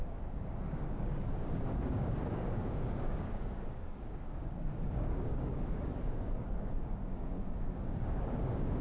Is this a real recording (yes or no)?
no